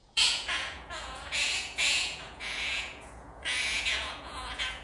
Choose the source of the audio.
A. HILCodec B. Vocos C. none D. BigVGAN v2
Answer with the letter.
B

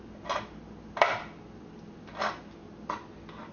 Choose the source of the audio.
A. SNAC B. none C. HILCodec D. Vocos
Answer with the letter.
B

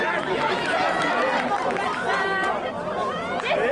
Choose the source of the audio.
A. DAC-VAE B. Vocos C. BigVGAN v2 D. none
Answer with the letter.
D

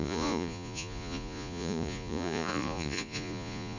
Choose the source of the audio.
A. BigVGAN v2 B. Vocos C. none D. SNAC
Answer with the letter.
B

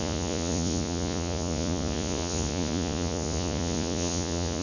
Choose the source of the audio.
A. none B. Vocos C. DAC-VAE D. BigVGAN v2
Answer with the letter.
B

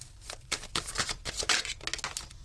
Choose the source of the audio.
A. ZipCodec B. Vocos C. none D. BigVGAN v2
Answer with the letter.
C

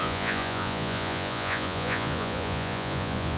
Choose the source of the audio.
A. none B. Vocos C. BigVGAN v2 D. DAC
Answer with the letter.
B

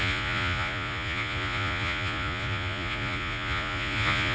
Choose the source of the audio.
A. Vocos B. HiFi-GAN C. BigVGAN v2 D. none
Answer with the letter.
A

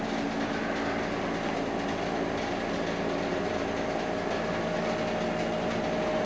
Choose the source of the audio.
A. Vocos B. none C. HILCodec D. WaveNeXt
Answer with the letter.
B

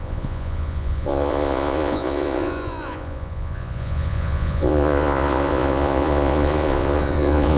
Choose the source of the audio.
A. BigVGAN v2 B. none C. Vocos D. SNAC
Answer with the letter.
C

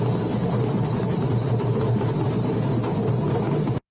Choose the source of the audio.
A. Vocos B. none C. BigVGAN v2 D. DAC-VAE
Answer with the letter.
B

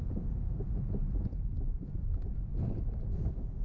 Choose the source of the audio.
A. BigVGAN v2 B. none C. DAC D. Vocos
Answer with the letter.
D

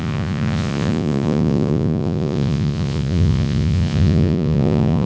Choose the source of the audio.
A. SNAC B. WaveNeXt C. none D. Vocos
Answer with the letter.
D